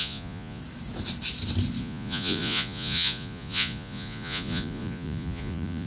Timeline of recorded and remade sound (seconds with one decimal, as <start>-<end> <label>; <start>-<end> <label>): 0.0-0.6 remade; 0.6-1.8 recorded; 1.8-5.9 remade

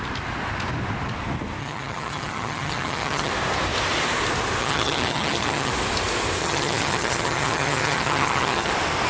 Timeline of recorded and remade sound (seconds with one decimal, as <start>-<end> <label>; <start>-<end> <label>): 0.0-1.6 recorded; 1.6-3.3 remade; 3.3-4.6 recorded; 4.6-5.7 remade; 5.7-6.4 recorded; 6.4-8.7 remade; 8.7-9.1 recorded